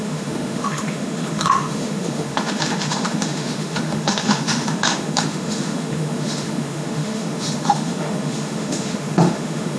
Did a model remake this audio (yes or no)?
yes